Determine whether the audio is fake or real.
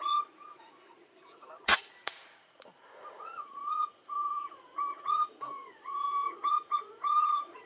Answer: fake